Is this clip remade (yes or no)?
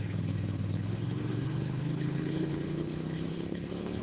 yes